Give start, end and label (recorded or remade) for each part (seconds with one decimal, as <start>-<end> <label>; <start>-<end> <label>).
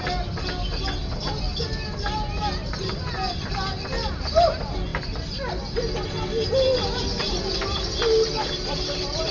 0.0-9.3 recorded